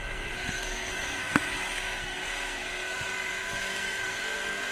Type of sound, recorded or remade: remade